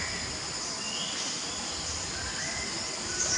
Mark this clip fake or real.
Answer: real